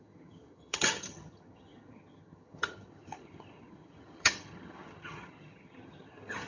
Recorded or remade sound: remade